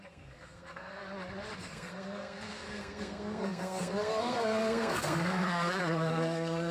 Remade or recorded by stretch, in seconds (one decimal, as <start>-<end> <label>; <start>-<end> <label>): 0.0-1.0 remade; 1.0-1.7 recorded; 1.7-6.7 remade